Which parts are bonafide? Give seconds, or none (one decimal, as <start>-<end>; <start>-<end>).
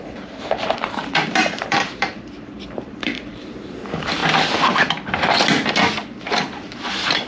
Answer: 4.2-6.3